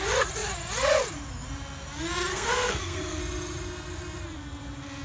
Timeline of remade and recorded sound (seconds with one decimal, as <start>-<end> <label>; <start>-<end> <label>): 0.0-2.3 recorded; 2.3-3.2 remade; 3.2-5.0 recorded